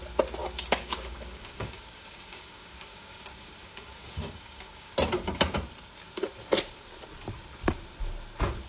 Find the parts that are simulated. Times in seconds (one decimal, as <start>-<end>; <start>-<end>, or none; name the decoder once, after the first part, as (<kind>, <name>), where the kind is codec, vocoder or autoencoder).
0.4-4.9 (codec, DAC)